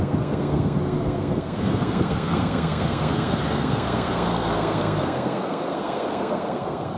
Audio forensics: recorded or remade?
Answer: remade